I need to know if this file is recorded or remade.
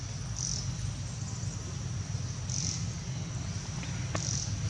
recorded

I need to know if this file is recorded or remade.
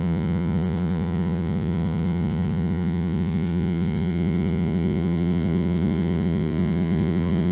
remade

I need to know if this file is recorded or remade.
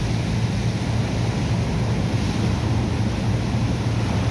recorded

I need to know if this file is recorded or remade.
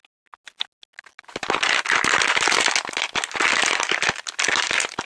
recorded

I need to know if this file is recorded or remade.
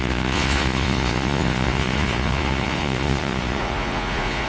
remade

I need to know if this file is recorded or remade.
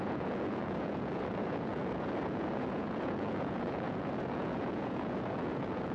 remade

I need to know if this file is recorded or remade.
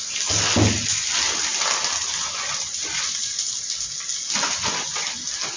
recorded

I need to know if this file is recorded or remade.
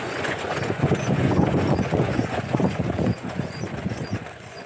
remade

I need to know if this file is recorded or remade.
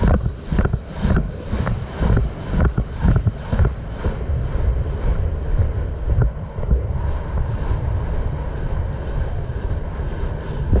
recorded